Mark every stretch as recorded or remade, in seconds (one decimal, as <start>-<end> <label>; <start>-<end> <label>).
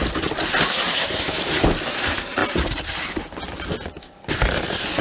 0.0-5.0 recorded